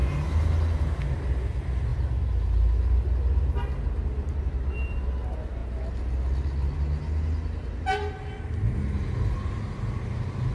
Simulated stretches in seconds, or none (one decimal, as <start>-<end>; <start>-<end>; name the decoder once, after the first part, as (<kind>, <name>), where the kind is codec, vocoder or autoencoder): none